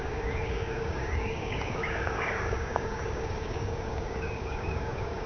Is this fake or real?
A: fake